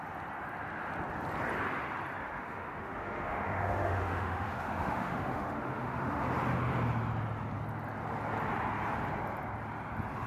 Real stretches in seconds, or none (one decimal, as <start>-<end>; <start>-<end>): 0.0-2.2; 6.2-10.3